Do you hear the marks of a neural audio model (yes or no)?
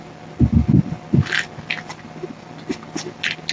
no